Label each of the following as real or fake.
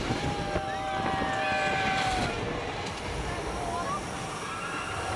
real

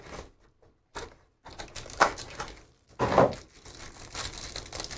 real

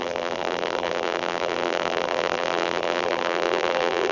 fake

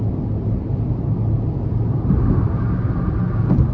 real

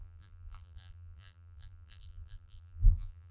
fake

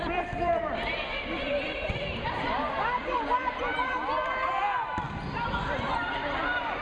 fake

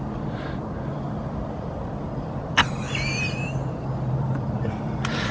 fake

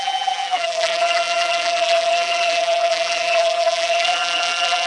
fake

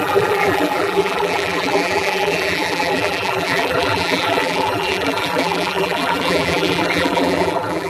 fake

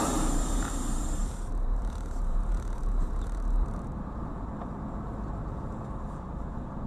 fake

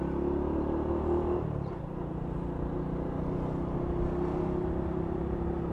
real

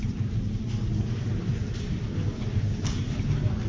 real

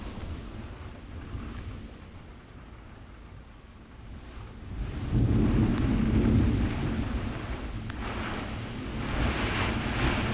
real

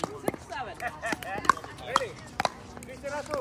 real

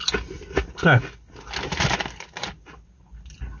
real